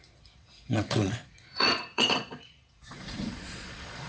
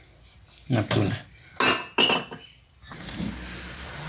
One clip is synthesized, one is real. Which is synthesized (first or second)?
first